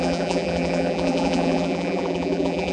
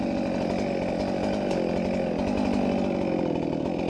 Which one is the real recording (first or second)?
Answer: second